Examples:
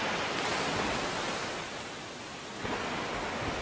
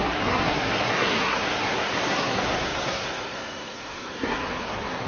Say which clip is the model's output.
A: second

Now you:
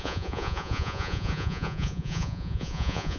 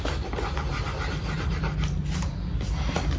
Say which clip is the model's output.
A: first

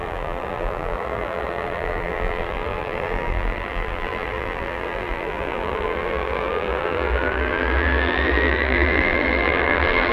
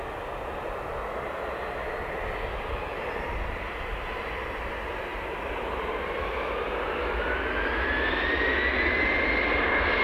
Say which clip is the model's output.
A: first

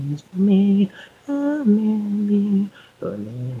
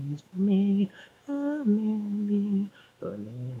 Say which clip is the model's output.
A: second